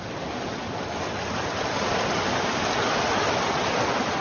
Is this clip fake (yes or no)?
no